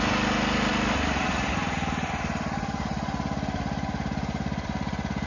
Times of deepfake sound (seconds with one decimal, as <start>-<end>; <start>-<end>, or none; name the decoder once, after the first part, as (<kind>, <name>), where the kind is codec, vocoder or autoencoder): none